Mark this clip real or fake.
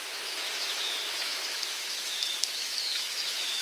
fake